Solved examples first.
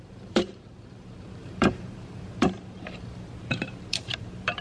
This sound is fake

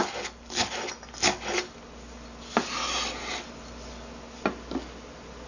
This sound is real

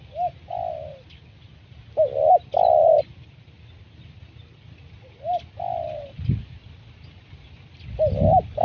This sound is real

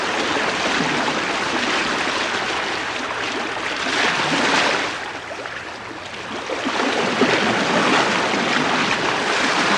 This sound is real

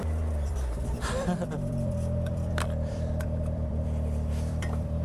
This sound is fake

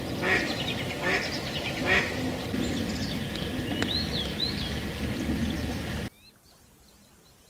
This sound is real